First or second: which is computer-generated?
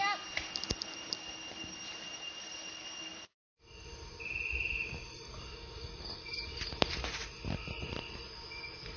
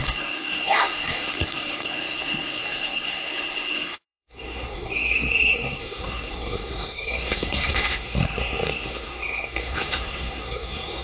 second